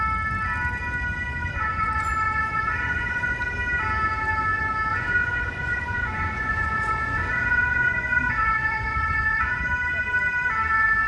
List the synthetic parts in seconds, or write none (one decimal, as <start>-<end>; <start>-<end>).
1.4-3.4; 4.9-9.6